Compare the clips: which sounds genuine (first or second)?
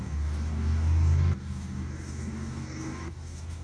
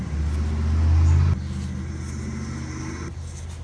second